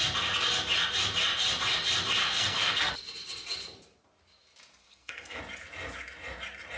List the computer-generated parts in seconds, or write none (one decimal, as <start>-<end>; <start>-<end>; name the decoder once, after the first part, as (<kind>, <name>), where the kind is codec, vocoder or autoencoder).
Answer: 2.2-2.9 (codec, SNAC); 4.8-5.4

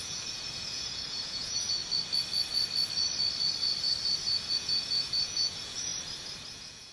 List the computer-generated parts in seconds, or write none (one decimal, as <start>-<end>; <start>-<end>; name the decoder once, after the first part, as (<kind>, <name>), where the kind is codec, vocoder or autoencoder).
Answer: 0.0-1.8 (vocoder, Vocos); 4.5-5.9; 6.5-6.9

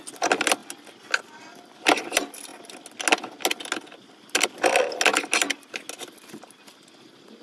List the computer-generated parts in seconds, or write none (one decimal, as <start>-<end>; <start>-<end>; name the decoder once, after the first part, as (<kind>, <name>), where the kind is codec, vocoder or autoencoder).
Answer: none

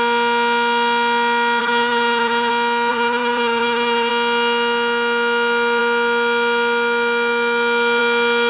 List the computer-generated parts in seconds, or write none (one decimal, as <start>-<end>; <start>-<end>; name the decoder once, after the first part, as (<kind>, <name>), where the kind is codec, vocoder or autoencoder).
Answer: 1.6-2.5 (vocoder, HiFi-GAN); 2.9-4.1